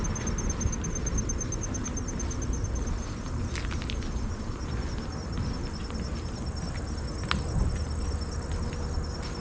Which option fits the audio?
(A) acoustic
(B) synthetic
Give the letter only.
A